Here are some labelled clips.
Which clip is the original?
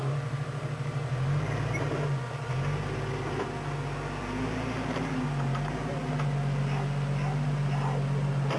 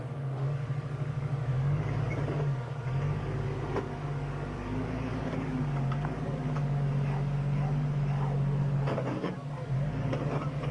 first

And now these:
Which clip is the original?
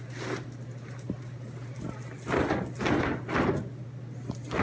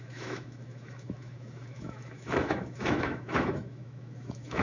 first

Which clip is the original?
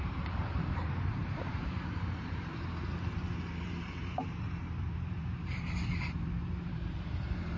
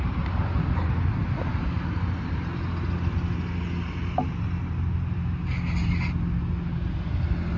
second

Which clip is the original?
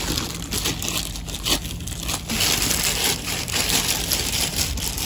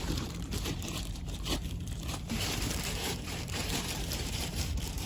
first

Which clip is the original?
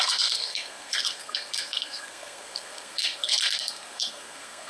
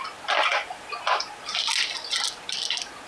second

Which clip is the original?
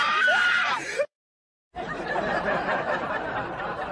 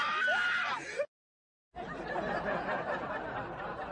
second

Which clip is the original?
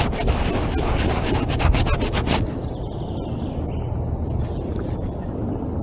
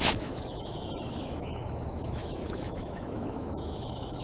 first